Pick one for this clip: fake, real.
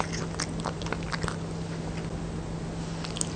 real